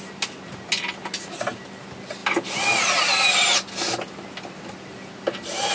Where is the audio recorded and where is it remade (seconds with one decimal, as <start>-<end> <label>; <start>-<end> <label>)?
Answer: 0.0-5.7 recorded